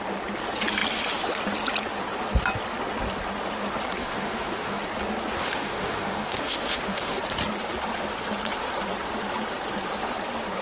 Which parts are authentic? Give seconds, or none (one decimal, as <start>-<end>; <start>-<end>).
0.0-4.0; 4.8-5.4; 7.2-10.6

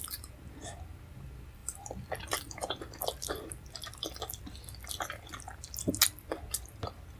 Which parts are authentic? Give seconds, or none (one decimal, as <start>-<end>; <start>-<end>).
0.0-1.6; 5.9-7.2

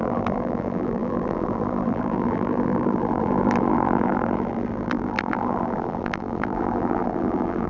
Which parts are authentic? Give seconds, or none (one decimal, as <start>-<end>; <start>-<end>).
none

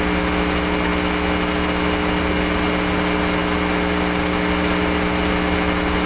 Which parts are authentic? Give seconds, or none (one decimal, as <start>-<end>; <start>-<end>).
0.0-6.1

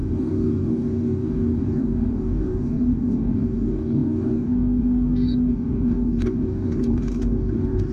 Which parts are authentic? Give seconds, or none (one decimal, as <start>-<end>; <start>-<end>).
none

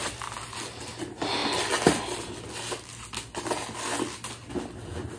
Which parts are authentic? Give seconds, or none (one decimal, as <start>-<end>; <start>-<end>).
0.0-5.2

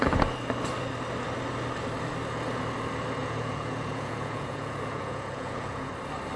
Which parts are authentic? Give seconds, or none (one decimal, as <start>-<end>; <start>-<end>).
0.0-3.2; 5.9-6.4